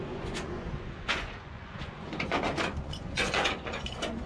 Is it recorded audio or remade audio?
remade